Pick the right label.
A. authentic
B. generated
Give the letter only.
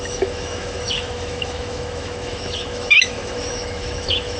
B